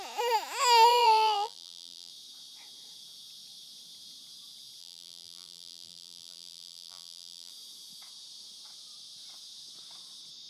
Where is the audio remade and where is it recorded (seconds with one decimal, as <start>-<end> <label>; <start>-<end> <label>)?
0.0-0.9 recorded; 0.9-2.1 remade; 2.1-4.8 recorded; 4.8-7.5 remade; 7.5-10.5 recorded